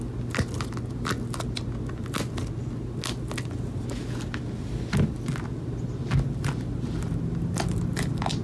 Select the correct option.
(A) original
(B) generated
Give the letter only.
A